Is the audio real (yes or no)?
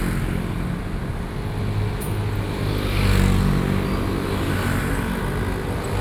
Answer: yes